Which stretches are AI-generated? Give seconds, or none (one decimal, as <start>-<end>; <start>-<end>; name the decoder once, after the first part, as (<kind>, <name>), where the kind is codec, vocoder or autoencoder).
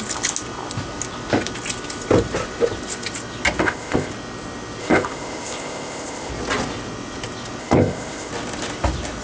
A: 3.6-4.1 (codec, ZipCodec); 4.8-6.3; 7.6-8.3